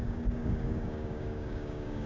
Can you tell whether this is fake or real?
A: fake